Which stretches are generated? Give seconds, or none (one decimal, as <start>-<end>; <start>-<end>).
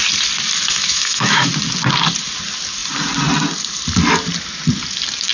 0.7-1.5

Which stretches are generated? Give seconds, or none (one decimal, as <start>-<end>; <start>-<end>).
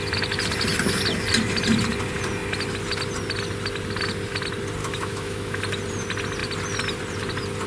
4.8-5.6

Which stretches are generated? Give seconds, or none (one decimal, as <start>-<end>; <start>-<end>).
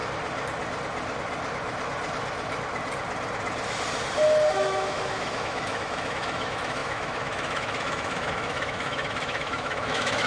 4.5-10.3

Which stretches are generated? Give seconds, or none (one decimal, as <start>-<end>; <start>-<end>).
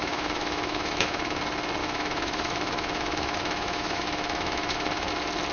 0.0-1.4; 1.8-5.1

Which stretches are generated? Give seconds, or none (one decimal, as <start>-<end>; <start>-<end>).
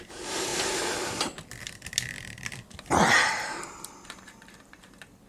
none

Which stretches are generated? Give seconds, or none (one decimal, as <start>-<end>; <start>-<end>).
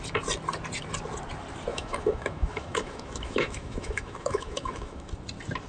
1.7-5.1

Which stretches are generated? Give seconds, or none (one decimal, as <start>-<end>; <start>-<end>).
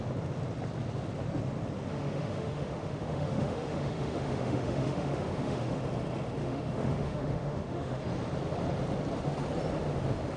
1.9-5.8; 6.4-8.0